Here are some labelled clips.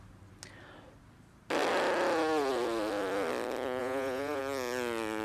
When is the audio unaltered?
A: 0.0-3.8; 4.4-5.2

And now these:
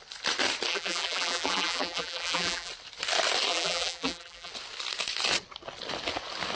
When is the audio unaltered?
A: 0.0-0.7; 2.7-3.5; 4.5-6.5

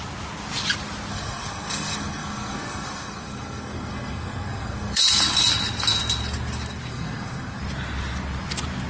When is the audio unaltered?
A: 0.0-1.1; 5.0-6.9; 7.6-8.9

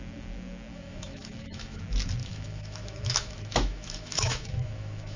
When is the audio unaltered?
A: 0.0-0.7; 1.8-2.2

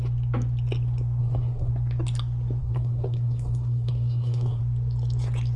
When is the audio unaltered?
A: 0.0-1.2; 1.7-2.6; 4.6-5.6

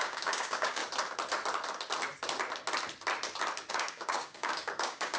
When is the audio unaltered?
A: 0.8-3.7

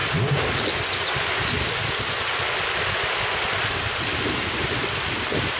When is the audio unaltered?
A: 0.0-5.6